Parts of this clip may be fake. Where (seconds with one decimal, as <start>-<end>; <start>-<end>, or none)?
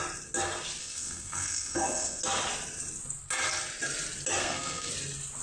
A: 0.8-2.2; 4.4-4.9